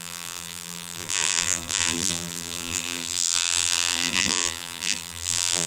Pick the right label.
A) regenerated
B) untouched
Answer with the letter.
A